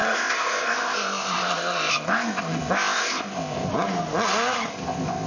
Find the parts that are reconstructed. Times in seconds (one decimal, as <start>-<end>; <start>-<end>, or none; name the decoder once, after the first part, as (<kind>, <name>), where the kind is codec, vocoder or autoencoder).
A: 0.0-3.7 (codec, ZipCodec); 4.7-5.3